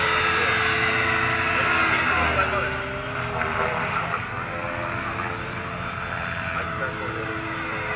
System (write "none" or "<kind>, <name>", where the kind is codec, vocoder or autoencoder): none